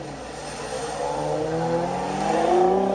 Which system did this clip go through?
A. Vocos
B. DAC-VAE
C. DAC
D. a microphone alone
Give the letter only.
D